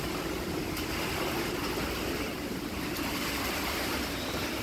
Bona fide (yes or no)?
yes